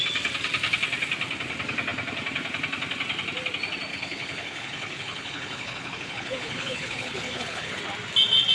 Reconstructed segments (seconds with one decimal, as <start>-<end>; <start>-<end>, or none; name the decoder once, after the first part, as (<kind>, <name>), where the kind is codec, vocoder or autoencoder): 3.9-7.8 (codec, HILCodec)